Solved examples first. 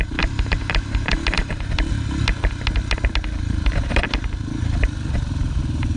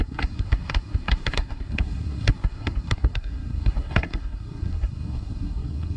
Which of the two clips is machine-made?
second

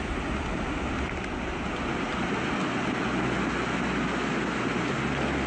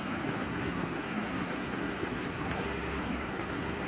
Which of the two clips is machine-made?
second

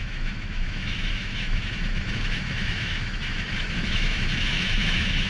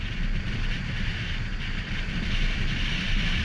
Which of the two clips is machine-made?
first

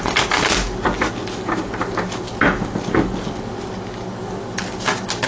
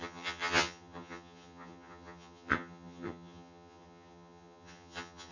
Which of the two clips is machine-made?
second